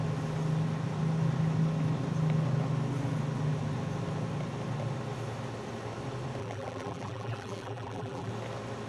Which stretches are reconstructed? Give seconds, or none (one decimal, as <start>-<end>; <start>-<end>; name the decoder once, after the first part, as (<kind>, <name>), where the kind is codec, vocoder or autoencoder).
6.4-8.3 (vocoder, BigVGAN v2)

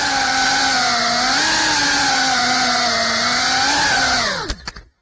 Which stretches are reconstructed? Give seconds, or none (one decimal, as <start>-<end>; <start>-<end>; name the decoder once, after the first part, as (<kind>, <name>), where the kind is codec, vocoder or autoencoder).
none

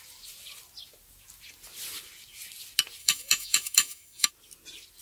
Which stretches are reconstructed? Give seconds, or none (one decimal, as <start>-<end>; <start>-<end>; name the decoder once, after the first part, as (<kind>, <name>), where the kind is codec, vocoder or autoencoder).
3.0-4.3 (autoencoder, DAC-VAE)

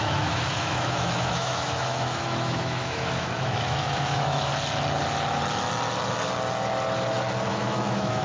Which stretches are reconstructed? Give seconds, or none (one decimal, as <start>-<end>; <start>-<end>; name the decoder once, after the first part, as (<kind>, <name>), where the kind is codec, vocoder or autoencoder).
0.0-4.5 (autoencoder, DAC-VAE); 7.5-8.2

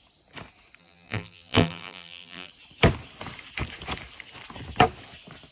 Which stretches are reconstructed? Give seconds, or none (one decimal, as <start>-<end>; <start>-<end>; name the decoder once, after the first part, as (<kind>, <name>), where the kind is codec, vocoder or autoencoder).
0.8-2.5 (vocoder, BigVGAN v2)

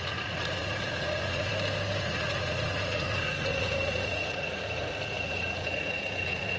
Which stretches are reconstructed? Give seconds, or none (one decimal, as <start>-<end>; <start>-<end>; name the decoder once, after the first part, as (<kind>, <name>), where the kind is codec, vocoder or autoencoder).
0.0-1.5 (vocoder, Vocos); 2.0-6.6

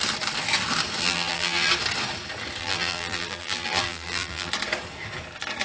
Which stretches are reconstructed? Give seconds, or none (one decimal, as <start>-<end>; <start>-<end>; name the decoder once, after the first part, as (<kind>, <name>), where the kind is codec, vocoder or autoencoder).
1.0-1.7 (vocoder, BigVGAN v2); 2.6-4.5